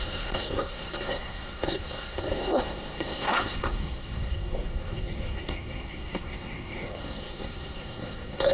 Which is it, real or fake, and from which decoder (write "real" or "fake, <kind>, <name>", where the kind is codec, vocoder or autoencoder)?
fake, codec, SNAC